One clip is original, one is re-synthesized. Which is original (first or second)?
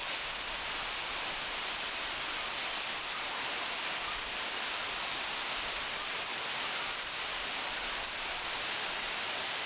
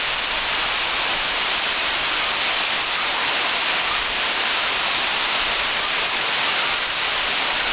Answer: first